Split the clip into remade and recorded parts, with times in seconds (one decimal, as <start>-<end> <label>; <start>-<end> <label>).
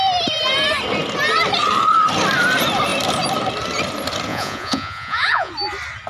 0.0-4.3 recorded; 4.3-5.5 remade; 5.5-6.1 recorded